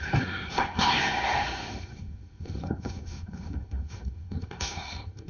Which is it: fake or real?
fake